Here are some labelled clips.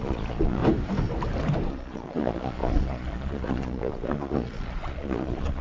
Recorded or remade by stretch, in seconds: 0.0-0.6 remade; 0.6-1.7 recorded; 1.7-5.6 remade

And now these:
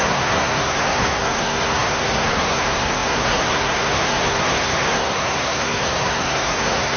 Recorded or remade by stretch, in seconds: 0.0-7.0 remade

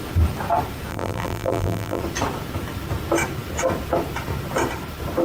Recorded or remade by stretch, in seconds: 0.0-0.9 recorded; 0.9-2.0 remade; 2.0-5.2 recorded

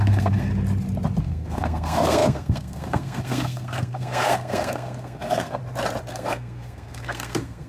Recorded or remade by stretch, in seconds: 0.0-0.5 remade; 0.5-1.2 recorded; 1.2-5.6 remade; 5.6-6.1 recorded; 6.1-7.7 remade